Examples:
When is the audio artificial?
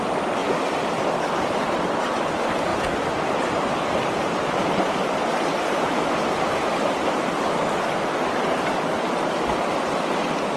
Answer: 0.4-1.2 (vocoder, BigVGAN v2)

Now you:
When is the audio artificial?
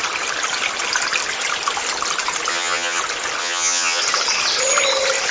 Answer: 2.5-3.0 (vocoder, HiFi-GAN); 3.4-4.0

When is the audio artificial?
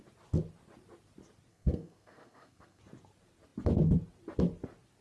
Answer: 1.5-2.8 (codec, SNAC)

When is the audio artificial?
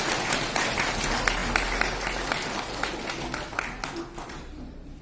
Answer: none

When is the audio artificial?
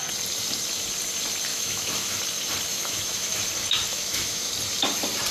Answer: 1.5-2.2 (autoencoder, DAC-VAE); 2.7-3.4; 3.9-4.5